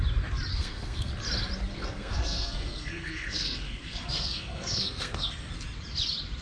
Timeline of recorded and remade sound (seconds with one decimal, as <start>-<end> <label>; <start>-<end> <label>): 0.0-0.5 recorded; 0.5-1.1 remade; 1.1-1.7 recorded; 1.7-5.5 remade; 5.5-6.4 recorded